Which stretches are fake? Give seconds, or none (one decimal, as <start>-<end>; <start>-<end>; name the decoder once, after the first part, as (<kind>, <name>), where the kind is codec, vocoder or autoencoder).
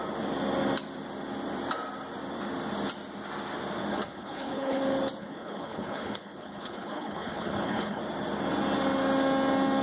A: 3.9-4.8 (codec, HILCodec); 5.2-8.0